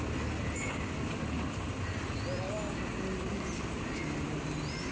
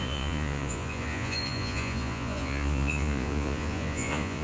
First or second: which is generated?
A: second